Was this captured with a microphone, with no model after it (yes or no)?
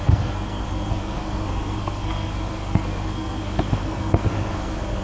no